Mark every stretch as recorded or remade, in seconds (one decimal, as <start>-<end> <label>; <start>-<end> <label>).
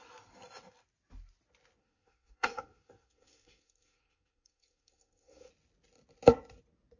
0.0-1.8 recorded; 1.8-5.5 remade; 5.5-7.0 recorded